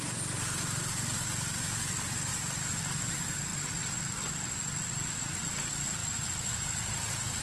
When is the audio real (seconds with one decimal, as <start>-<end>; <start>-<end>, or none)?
2.3-3.1; 3.5-5.5